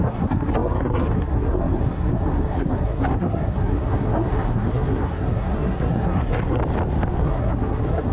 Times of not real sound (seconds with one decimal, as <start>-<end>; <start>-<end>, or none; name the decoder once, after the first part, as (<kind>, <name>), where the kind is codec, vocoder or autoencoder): 0.0-6.6 (codec, SNAC); 7.2-8.1